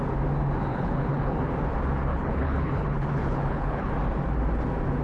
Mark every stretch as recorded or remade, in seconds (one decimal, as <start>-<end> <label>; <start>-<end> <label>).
0.0-0.7 recorded; 0.7-1.5 remade; 1.5-2.1 recorded; 2.1-3.9 remade; 3.9-5.0 recorded